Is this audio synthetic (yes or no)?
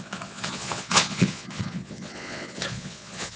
yes